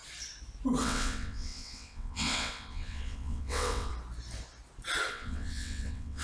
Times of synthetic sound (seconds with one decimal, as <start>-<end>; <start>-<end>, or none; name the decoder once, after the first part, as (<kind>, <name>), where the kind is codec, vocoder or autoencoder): 0.8-3.9 (vocoder, WaveNeXt); 5.1-6.2